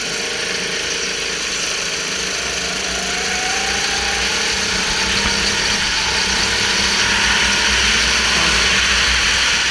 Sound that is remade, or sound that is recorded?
recorded